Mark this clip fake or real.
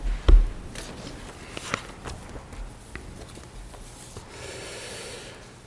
real